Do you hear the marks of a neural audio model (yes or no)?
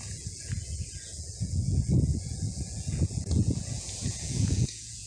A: yes